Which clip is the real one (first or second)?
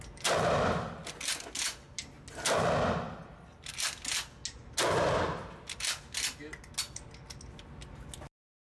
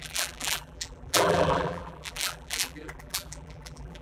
first